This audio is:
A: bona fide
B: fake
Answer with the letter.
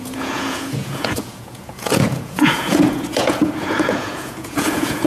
B